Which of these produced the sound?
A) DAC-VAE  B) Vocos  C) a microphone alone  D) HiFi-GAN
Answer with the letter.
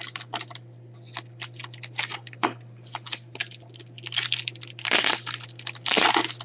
C